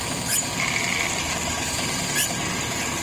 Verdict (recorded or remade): remade